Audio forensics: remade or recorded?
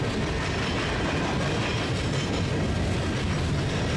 recorded